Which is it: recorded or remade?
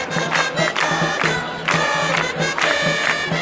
recorded